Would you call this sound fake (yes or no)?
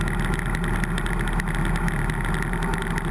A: no